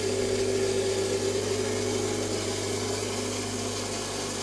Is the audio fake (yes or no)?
no